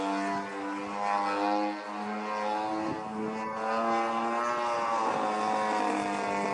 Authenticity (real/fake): real